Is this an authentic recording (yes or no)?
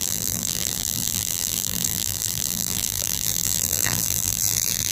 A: no